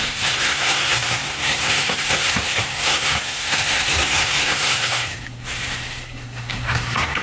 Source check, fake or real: fake